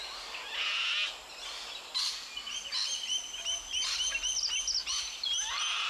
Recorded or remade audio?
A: recorded